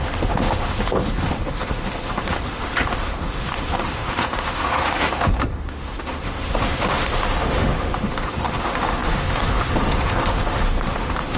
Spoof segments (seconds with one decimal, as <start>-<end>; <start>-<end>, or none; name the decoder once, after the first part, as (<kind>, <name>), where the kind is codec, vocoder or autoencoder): 0.0-11.4 (autoencoder, DAC-VAE)